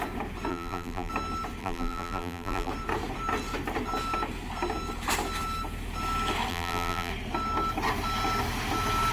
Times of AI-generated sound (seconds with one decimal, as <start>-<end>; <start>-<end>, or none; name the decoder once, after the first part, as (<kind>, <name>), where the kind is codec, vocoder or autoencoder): 0.5-1.1 (vocoder, BigVGAN v2); 1.6-2.7; 6.5-7.1